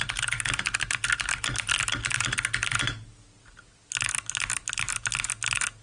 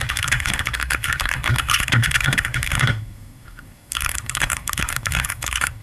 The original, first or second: first